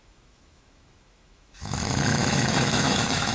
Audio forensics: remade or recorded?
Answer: remade